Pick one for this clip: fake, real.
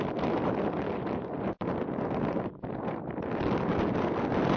real